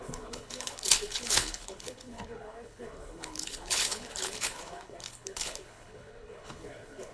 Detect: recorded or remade remade